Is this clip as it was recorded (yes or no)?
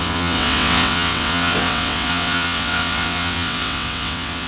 no